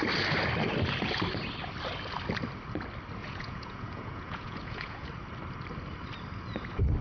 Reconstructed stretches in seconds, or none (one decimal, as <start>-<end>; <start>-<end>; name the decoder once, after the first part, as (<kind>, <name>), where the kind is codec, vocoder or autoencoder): 3.2-5.1 (vocoder, Vocos)